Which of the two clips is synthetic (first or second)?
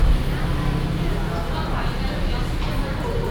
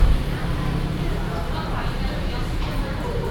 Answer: second